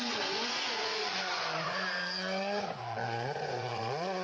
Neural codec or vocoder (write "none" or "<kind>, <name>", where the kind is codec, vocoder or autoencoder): vocoder, Vocos